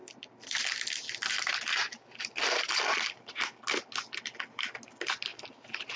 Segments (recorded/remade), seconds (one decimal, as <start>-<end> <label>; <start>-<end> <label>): 0.0-6.0 recorded